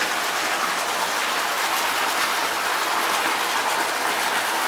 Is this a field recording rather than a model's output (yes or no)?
yes